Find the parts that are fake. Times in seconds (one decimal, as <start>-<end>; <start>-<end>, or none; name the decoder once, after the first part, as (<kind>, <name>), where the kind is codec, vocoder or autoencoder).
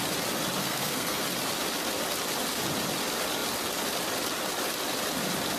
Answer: 0.6-1.2 (codec, SNAC)